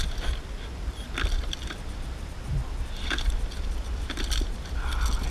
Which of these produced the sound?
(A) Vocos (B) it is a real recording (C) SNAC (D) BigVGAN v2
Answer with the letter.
B